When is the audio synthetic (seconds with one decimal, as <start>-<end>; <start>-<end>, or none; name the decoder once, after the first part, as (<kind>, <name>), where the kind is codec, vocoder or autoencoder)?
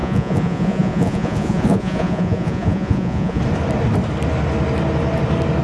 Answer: 0.0-3.4 (vocoder, Vocos)